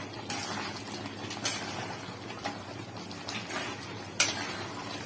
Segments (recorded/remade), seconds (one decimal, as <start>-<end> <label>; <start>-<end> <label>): 0.0-0.4 remade; 0.4-3.5 recorded; 3.5-5.1 remade

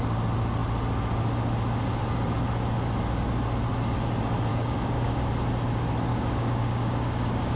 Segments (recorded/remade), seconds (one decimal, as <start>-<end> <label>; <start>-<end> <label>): 0.0-4.5 recorded; 4.5-5.2 remade; 5.2-6.1 recorded; 6.1-7.6 remade